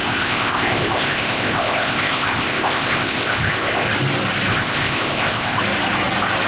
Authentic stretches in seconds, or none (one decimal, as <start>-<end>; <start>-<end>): 3.9-4.5; 5.6-6.5